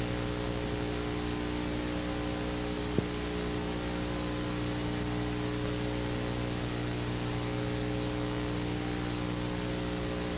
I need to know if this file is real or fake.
real